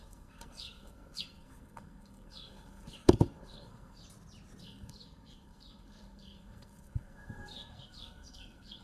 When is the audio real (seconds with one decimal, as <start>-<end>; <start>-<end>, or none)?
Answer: 4.0-4.6